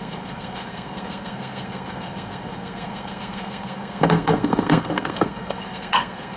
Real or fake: fake